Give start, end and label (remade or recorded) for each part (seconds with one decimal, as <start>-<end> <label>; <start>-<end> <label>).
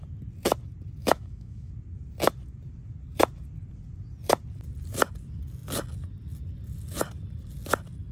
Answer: 0.0-1.0 recorded; 1.0-1.7 remade; 1.7-8.1 recorded